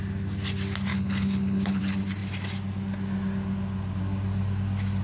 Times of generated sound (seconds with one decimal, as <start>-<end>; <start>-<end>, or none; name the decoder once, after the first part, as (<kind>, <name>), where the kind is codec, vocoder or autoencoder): 0.9-1.8 (codec, HILCodec)